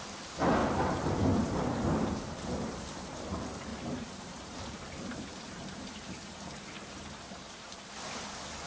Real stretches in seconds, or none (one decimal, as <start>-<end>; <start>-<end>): 0.0-0.6; 3.1-3.7; 7.8-8.7